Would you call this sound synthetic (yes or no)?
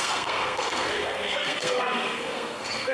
yes